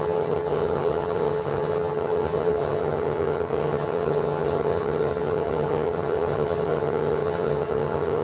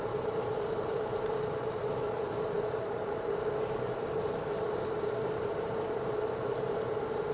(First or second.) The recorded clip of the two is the second